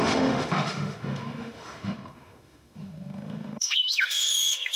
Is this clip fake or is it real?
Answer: fake